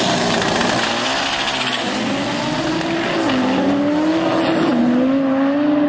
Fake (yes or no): no